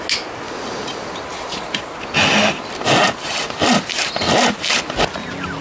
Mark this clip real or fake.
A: real